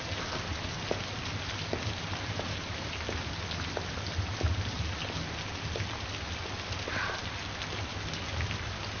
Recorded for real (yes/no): yes